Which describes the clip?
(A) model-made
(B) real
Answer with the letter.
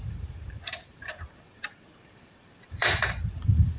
A